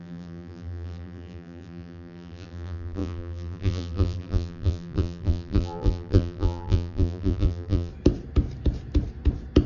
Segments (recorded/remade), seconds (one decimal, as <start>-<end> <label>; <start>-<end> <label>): 0.0-7.9 remade; 7.9-9.7 recorded